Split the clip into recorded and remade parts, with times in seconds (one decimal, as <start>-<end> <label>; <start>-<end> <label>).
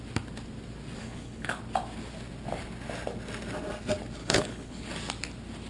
0.0-1.0 recorded; 1.0-1.6 remade; 1.6-4.2 recorded; 4.2-4.9 remade; 4.9-5.7 recorded